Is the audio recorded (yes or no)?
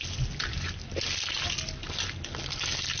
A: yes